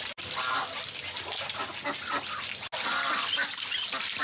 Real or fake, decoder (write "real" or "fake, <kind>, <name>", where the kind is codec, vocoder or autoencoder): real